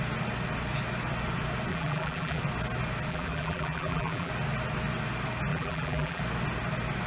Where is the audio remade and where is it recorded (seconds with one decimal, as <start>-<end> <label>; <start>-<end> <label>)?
0.0-1.7 recorded; 1.7-2.4 remade; 2.4-3.1 recorded; 3.1-4.3 remade; 4.3-5.5 recorded; 5.5-6.2 remade; 6.2-7.1 recorded